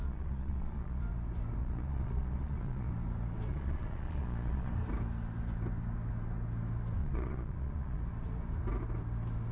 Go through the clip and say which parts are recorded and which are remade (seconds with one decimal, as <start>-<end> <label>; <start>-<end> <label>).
0.0-1.0 remade; 1.0-1.6 recorded; 1.6-2.9 remade; 2.9-3.5 recorded; 3.5-4.7 remade; 4.7-7.0 recorded; 7.0-8.0 remade; 8.0-9.5 recorded